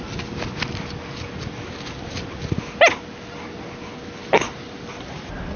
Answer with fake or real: real